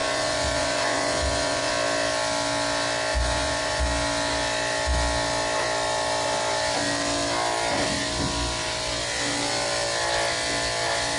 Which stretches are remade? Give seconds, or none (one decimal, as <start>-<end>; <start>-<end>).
0.0-1.7; 3.1-3.8

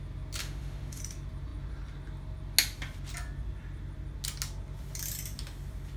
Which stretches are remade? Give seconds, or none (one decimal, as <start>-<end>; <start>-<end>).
0.4-1.0

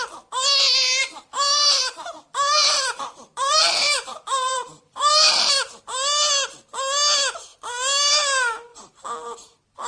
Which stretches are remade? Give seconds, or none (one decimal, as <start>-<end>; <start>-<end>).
1.0-5.7

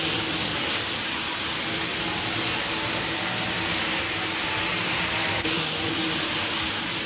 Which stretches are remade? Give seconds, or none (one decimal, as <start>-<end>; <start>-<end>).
none

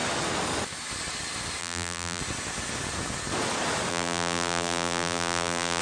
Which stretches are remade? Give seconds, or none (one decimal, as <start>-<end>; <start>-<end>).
1.6-2.2; 3.9-5.8

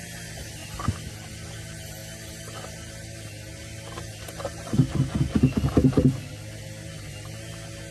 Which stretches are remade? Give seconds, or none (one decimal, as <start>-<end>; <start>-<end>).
none

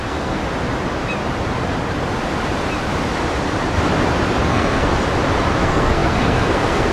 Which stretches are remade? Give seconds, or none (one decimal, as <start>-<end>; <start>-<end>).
0.0-0.4; 4.4-4.9; 5.6-6.9